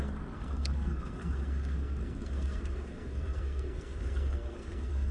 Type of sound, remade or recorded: remade